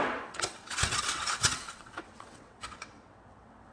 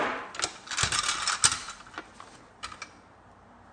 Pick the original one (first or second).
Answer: second